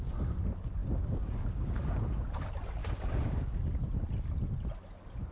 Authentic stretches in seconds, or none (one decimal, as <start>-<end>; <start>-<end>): 0.0-0.8; 2.0-2.8; 3.6-5.3